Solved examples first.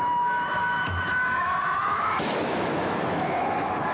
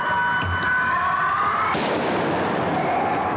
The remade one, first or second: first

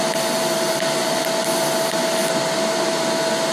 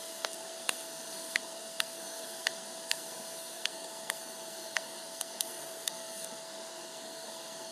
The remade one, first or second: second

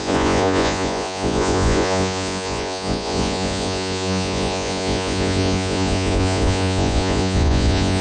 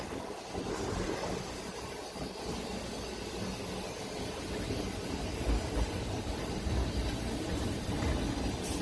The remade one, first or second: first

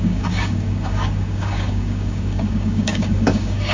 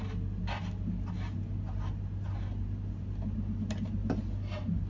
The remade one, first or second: first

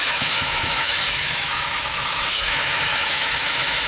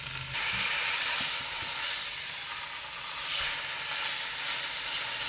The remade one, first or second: first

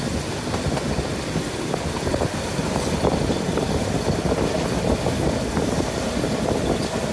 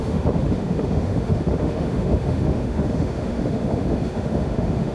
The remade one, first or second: second